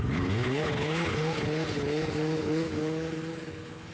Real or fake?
fake